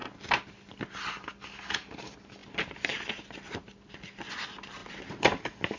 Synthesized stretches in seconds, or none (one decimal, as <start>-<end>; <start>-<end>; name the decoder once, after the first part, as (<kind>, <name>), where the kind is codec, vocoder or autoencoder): 0.0-0.7 (vocoder, BigVGAN v2); 2.4-4.3